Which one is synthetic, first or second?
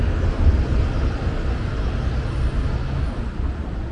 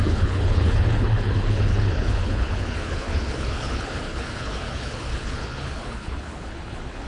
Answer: second